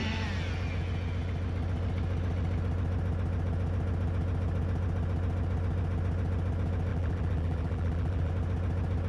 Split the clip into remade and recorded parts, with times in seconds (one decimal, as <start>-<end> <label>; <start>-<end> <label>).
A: 0.0-6.9 recorded; 6.9-8.3 remade; 8.3-9.1 recorded